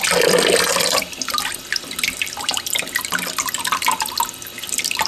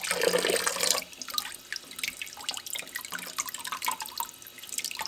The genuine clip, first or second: second